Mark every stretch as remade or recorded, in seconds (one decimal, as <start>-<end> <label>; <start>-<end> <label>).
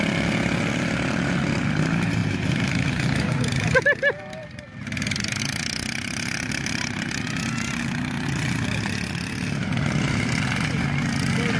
0.0-2.2 recorded; 2.2-3.8 remade; 3.8-11.6 recorded